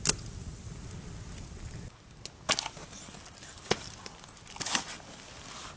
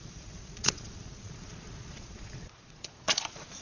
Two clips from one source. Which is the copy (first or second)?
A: second